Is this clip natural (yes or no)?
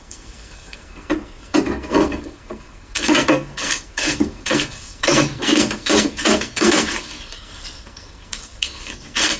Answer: no